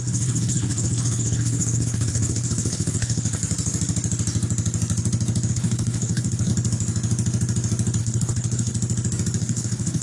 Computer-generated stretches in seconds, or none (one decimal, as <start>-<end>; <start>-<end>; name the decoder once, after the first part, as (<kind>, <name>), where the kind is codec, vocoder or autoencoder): 0.0-3.4 (codec, HILCodec); 5.5-6.5; 8.0-8.7; 9.4-10.0